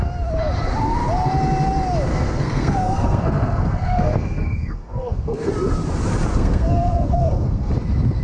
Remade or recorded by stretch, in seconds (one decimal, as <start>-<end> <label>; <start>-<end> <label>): 0.0-2.1 recorded; 2.1-5.5 remade; 5.5-6.3 recorded; 6.3-7.7 remade; 7.7-8.2 recorded